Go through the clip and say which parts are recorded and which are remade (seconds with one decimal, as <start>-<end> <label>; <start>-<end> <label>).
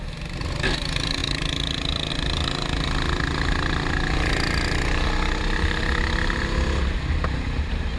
0.0-8.0 recorded